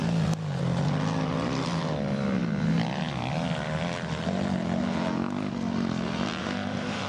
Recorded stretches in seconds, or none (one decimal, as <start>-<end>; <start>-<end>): 0.0-6.4